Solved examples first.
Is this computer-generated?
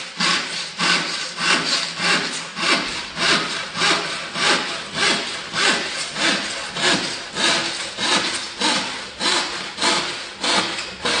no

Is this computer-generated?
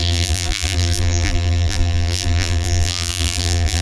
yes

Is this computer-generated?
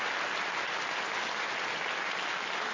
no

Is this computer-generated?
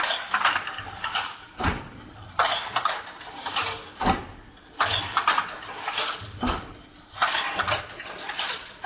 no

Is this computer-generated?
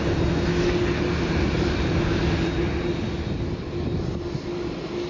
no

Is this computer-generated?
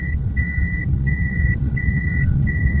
yes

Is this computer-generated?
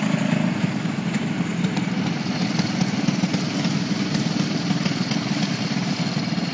no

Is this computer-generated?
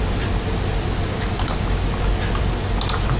no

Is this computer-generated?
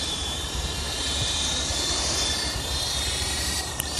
yes